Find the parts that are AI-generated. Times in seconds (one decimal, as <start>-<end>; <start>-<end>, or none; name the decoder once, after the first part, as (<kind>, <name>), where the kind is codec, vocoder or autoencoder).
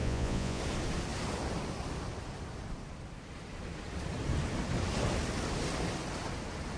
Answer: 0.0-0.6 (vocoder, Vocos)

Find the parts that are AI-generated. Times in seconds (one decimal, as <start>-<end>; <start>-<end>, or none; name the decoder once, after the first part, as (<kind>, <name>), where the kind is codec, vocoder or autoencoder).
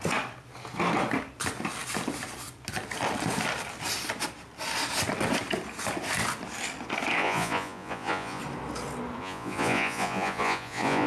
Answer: 7.2-8.4 (vocoder, Vocos); 9.2-11.1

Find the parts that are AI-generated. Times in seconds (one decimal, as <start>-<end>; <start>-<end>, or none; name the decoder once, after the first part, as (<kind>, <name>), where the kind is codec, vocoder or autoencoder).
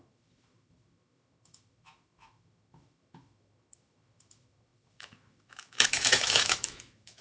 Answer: 0.0-7.2 (autoencoder, DAC-VAE)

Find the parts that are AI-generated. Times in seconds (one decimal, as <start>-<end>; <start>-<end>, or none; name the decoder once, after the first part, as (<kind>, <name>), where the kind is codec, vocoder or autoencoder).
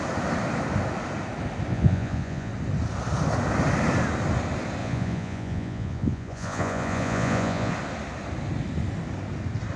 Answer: 1.7-2.5 (vocoder, Vocos); 4.8-7.7